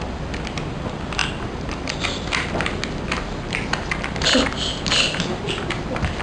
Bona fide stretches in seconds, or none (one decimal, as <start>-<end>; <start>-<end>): 0.0-6.2